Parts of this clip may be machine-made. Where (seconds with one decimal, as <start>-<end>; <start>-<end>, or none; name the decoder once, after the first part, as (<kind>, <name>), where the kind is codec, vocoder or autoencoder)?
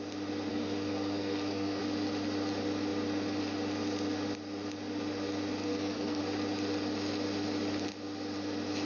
0.5-1.8 (codec, SNAC); 5.6-6.2